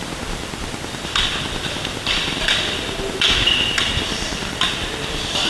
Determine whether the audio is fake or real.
fake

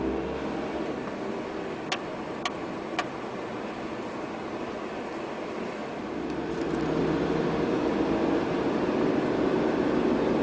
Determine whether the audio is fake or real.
real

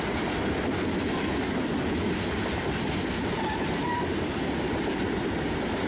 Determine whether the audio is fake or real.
real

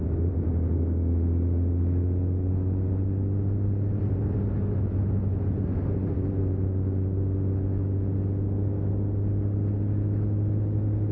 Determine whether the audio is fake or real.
real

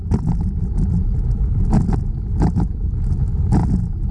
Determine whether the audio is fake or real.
real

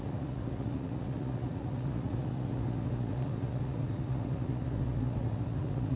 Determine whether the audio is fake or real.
fake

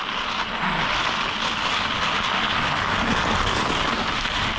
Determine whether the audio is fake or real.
real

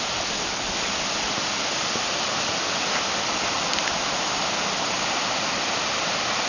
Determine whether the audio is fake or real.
fake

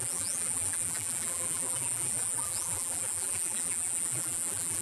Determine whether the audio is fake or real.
fake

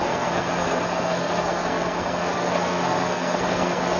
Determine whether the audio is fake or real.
fake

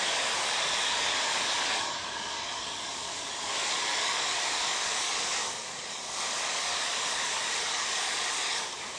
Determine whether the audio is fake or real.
fake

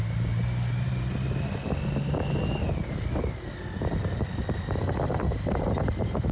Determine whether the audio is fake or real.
real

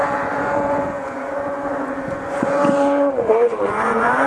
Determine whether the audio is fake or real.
fake